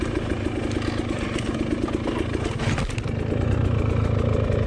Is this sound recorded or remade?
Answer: recorded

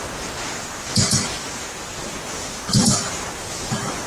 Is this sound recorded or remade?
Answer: recorded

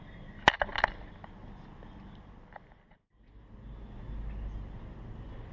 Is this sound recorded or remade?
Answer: recorded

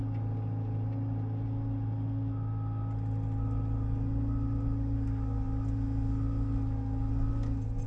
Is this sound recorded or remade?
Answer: recorded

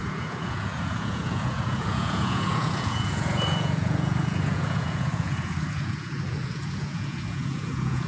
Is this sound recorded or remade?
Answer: remade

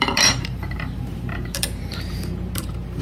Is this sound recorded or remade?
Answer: remade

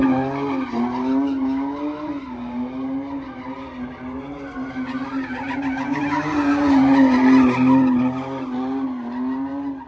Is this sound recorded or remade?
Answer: recorded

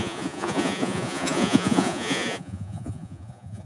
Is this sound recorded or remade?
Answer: remade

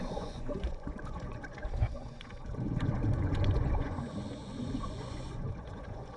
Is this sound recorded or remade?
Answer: remade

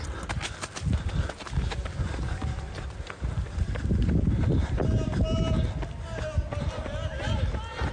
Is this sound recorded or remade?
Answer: recorded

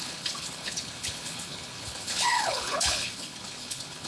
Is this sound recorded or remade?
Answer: remade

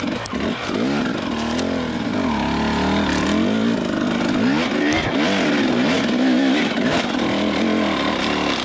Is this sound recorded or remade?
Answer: recorded